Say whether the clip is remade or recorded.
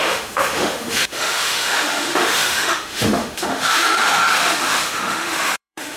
remade